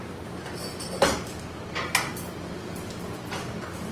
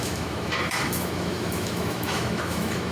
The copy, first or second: second